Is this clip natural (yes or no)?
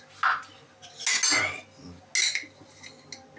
yes